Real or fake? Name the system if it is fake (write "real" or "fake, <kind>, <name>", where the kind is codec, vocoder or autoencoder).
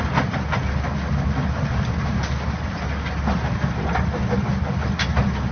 real